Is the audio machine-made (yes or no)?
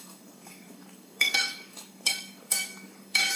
yes